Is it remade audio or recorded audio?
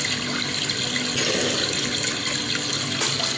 recorded